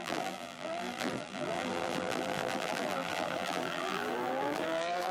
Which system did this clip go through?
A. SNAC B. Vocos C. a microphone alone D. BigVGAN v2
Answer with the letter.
D